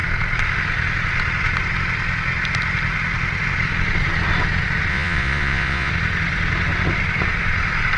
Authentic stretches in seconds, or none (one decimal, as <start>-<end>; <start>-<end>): 0.0-4.9; 5.9-8.0